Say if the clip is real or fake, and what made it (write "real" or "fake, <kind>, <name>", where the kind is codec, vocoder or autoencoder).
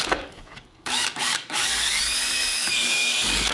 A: fake, codec, DAC